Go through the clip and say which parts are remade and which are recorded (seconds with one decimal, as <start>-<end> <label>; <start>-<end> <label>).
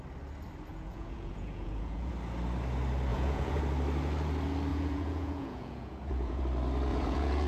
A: 0.0-0.7 recorded; 0.7-2.1 remade; 2.1-3.1 recorded; 3.1-3.6 remade; 3.6-4.7 recorded; 4.7-6.4 remade; 6.4-6.9 recorded; 6.9-7.5 remade